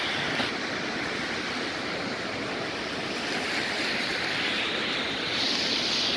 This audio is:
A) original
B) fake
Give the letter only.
A